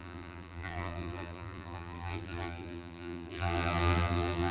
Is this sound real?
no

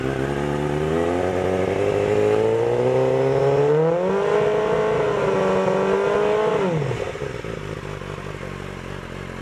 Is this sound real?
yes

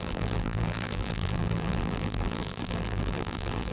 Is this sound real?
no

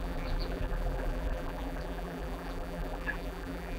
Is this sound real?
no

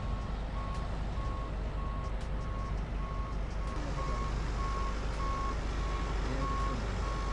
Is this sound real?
yes